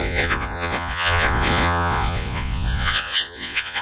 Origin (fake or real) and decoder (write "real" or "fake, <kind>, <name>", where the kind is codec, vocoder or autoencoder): fake, vocoder, Vocos